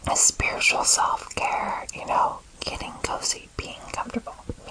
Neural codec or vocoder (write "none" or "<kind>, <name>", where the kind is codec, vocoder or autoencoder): vocoder, BigVGAN v2